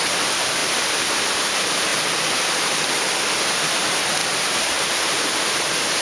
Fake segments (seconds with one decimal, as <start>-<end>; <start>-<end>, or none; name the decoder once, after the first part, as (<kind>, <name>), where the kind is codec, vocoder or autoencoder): 4.2-5.2 (vocoder, BigVGAN v2)